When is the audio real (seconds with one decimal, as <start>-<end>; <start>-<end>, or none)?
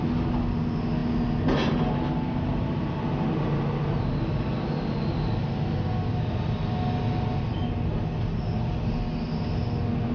0.0-10.1